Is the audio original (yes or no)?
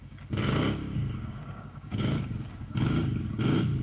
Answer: no